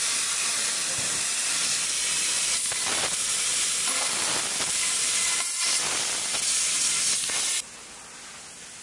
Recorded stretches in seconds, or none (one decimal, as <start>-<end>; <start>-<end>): 0.0-1.4; 2.3-3.5; 5.0-8.8